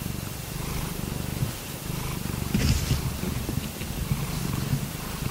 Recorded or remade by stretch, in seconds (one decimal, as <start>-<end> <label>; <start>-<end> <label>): 0.0-5.3 recorded